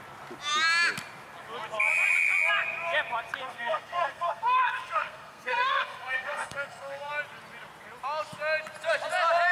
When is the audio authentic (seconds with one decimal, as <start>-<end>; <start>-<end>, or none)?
0.0-3.4; 7.1-9.5